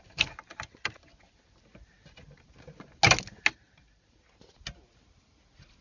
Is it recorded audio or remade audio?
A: recorded